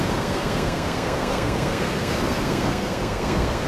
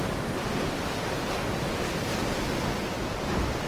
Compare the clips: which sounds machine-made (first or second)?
first